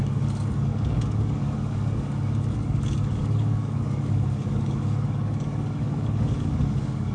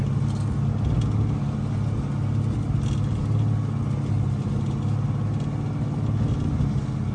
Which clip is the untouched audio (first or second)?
second